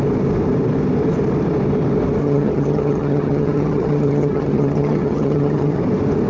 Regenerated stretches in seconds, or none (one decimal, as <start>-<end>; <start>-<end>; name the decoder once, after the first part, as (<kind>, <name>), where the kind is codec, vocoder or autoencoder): 2.2-5.8 (vocoder, HiFi-GAN)